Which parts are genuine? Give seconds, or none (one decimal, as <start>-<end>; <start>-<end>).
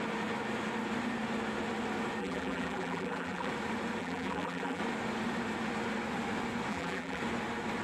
0.0-2.2; 3.5-4.0; 4.8-6.7; 7.2-7.8